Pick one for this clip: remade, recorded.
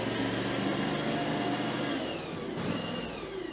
recorded